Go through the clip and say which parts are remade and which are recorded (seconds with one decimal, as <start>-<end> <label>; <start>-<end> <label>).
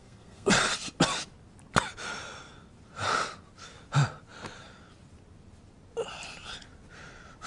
0.0-0.5 remade; 0.5-7.5 recorded